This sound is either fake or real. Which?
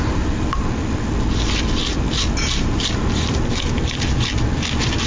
real